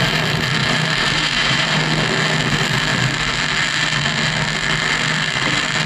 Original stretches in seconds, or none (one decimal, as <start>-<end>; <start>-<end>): 0.0-0.6; 1.8-5.9